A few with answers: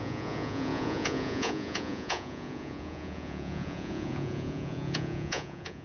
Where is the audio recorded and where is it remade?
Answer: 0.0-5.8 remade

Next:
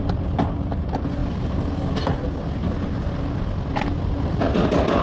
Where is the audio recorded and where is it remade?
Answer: 0.0-5.0 recorded

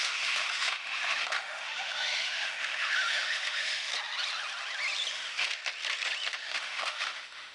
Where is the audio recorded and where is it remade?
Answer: 0.0-3.9 remade; 3.9-5.1 recorded; 5.1-5.6 remade; 5.6-6.3 recorded; 6.3-7.5 remade

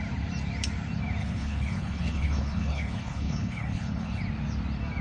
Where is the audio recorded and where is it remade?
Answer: 0.0-1.2 recorded; 1.2-4.2 remade; 4.2-5.0 recorded

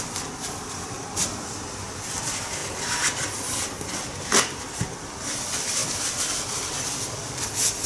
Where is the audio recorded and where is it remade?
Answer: 0.0-7.9 recorded

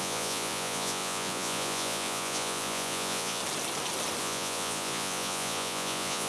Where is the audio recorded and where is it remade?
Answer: 0.0-3.4 remade; 3.4-4.2 recorded; 4.2-6.3 remade